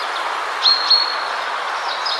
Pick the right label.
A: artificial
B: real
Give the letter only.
B